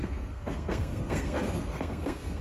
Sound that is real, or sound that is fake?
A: fake